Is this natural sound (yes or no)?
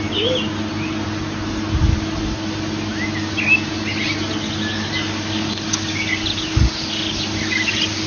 yes